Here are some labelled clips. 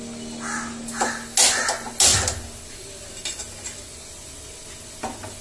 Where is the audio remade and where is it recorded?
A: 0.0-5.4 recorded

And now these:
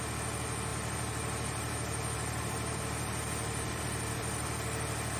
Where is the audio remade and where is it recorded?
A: 0.0-0.7 recorded; 0.7-3.8 remade; 3.8-5.2 recorded

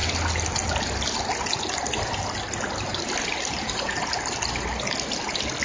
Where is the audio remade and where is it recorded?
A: 0.0-5.6 recorded